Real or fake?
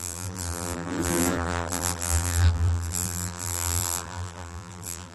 fake